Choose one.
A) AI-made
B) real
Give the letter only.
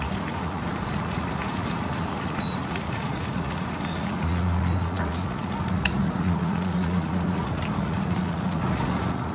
A